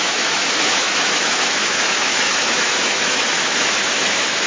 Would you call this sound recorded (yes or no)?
no